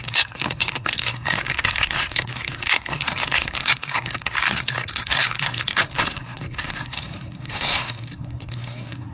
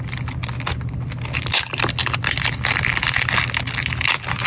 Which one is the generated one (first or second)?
first